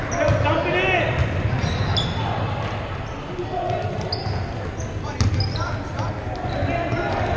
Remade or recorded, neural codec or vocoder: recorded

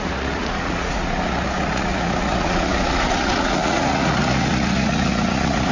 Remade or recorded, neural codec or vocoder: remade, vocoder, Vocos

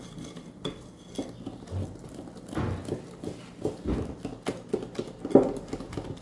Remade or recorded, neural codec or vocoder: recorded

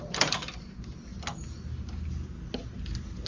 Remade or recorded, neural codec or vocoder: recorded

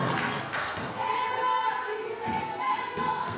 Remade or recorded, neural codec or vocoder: remade, codec, SNAC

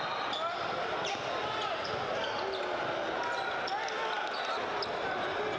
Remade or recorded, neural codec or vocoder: recorded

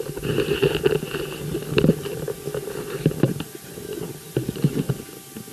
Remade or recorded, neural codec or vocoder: recorded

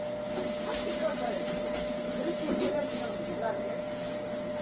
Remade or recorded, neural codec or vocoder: recorded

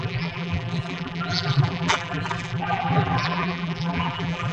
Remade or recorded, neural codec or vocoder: remade, vocoder, BigVGAN v2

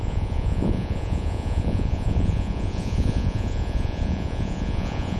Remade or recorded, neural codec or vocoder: remade, vocoder, Vocos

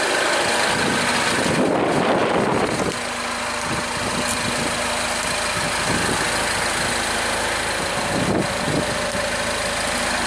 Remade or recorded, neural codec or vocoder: recorded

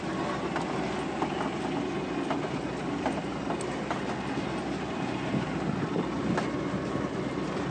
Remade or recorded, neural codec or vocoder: recorded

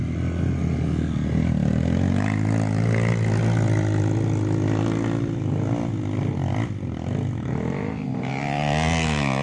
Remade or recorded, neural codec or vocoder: recorded